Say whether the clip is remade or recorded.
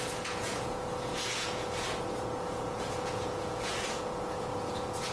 remade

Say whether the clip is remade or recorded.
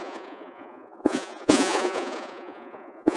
remade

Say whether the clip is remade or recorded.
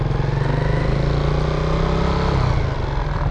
recorded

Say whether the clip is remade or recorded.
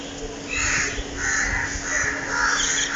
recorded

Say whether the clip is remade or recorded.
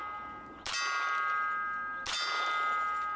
recorded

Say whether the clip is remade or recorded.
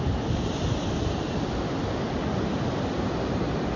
recorded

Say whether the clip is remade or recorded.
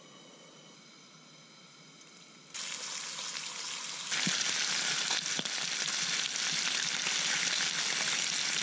recorded